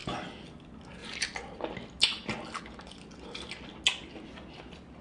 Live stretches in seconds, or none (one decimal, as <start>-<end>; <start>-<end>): 0.0-5.0